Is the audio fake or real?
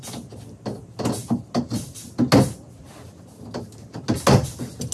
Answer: real